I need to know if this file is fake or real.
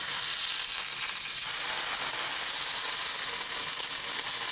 real